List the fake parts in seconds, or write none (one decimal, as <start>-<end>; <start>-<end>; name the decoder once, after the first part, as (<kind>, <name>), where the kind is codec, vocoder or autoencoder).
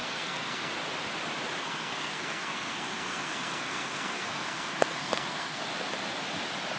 0.0-0.7 (codec, SNAC); 1.6-5.6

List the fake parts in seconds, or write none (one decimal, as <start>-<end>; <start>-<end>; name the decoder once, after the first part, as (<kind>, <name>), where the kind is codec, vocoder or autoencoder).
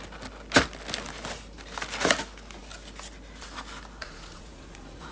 4.0-5.1 (vocoder, Vocos)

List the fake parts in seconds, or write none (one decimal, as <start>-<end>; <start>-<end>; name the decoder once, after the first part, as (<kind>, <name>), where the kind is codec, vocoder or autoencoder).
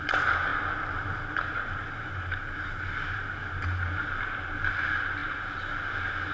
none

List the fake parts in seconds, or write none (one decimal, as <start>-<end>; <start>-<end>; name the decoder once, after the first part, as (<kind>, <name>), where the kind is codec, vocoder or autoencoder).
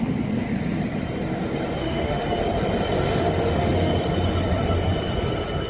1.8-2.4 (autoencoder, DAC-VAE); 3.1-3.9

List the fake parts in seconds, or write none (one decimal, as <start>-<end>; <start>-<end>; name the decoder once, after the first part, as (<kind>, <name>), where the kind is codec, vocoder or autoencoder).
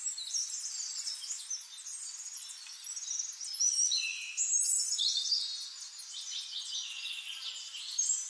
none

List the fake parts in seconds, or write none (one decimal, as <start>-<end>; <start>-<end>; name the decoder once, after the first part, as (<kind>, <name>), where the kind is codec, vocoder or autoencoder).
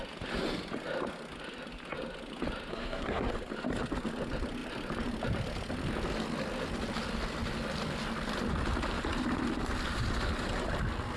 2.7-3.3 (codec, SNAC)